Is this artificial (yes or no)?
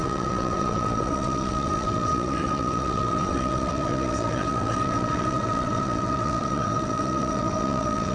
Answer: yes